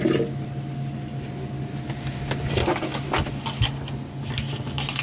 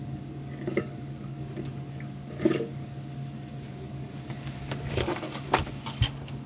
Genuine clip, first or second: first